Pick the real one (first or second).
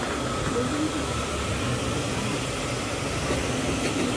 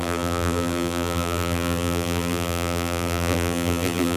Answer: first